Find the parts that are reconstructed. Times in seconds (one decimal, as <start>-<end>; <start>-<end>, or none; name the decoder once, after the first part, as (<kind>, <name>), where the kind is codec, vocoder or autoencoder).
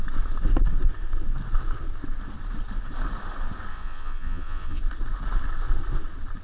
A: 3.7-4.8 (vocoder, Vocos)